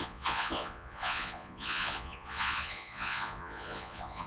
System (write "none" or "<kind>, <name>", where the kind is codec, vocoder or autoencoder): vocoder, Vocos